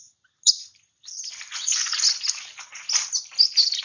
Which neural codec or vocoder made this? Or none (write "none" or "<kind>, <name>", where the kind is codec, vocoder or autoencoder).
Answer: none